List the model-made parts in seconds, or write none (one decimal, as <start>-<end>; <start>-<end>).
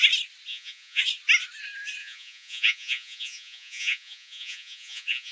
0.5-1.0; 2.0-5.3